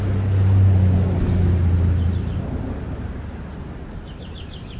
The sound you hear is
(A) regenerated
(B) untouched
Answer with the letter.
B